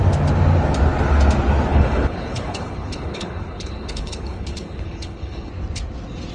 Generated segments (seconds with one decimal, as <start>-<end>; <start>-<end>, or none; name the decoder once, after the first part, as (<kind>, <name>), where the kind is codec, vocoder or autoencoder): 1.7-5.5 (codec, HILCodec)